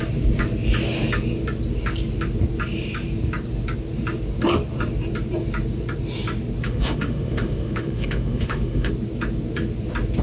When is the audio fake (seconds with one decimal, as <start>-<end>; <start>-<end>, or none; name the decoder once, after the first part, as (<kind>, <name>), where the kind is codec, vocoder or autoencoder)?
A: 6.6-8.9 (autoencoder, DAC-VAE)